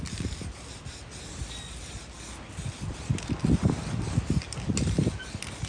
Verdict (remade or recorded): recorded